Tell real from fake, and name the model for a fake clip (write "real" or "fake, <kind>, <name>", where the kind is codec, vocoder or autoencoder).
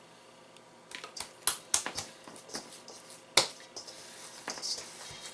real